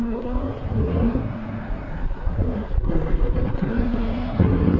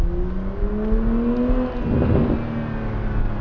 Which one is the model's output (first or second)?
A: first